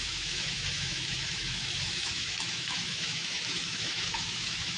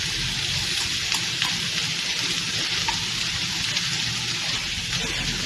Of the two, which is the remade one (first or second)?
first